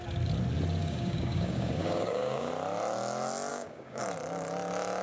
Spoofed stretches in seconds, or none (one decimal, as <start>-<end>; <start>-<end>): 0.8-2.5; 3.5-4.0